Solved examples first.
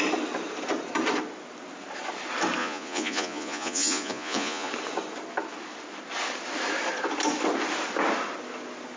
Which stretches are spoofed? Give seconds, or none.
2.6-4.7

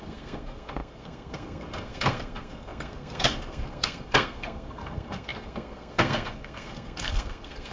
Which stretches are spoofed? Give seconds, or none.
0.0-7.7